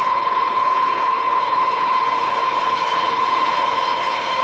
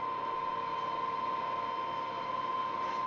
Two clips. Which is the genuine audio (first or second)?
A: second